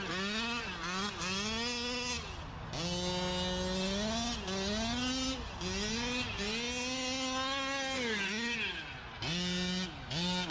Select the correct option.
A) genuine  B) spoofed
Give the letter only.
A